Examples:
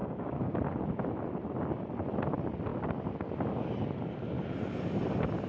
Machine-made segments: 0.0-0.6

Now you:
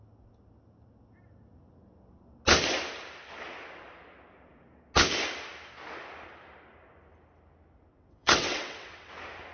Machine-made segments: 7.9-9.1

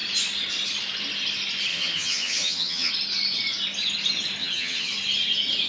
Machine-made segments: 1.7-2.9; 4.4-4.9

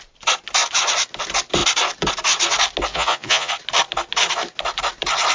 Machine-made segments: 2.9-3.5